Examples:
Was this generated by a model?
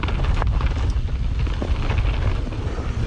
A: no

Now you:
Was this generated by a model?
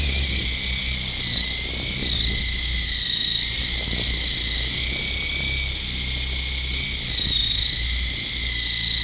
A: no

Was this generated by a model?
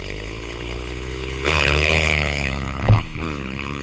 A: yes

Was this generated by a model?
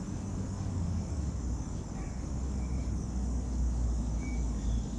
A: yes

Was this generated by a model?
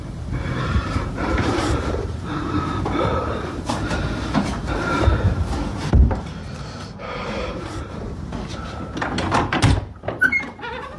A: yes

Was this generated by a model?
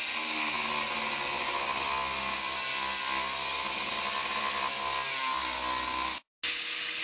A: no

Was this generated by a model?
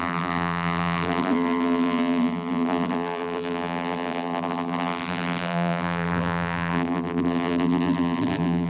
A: yes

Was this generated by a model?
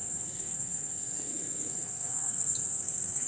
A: yes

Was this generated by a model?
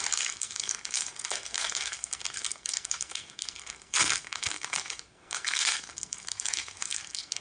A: yes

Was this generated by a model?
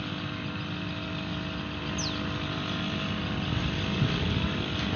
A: no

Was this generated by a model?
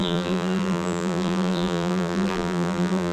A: yes